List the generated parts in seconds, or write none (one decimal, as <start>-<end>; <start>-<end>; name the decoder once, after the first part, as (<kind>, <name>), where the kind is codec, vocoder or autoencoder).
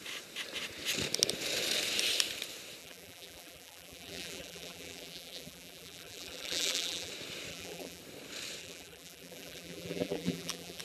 2.8-7.1 (vocoder, BigVGAN v2); 7.5-8.0; 8.6-10.8